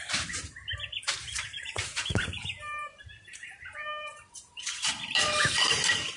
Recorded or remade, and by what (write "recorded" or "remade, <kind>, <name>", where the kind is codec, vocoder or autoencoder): remade, vocoder, BigVGAN v2